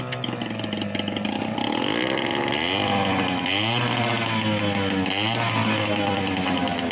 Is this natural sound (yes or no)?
yes